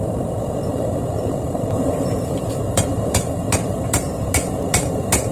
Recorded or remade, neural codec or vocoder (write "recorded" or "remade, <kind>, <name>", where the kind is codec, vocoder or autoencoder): remade, vocoder, BigVGAN v2